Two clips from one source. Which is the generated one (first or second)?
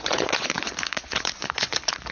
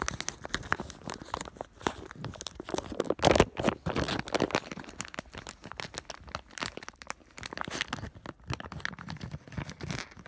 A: first